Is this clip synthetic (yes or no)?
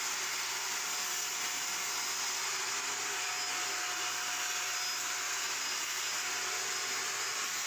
no